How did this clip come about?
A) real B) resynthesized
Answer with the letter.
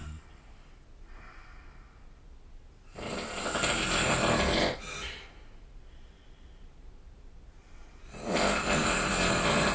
A